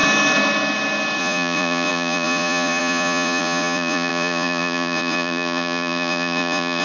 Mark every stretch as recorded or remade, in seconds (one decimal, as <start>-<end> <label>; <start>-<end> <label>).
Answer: 0.0-1.2 recorded; 1.2-6.8 remade